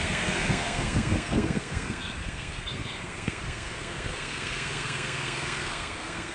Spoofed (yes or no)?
yes